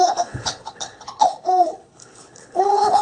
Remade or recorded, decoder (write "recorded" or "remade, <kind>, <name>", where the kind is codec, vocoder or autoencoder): remade, codec, HILCodec